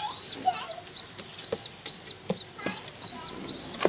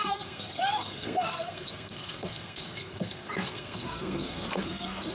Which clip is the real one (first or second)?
first